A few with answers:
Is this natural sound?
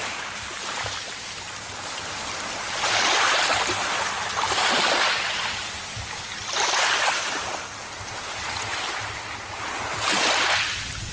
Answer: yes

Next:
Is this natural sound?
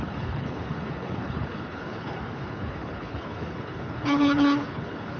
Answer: no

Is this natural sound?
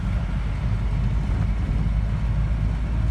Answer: yes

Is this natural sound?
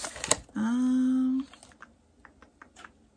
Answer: yes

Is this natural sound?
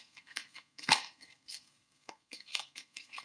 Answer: no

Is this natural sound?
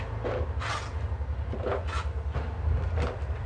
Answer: yes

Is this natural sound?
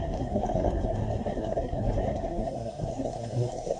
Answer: no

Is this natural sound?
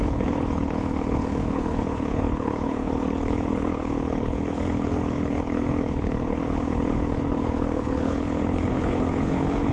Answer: no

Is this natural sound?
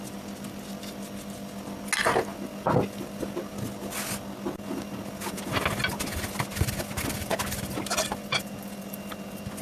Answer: yes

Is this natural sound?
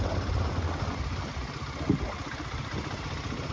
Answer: yes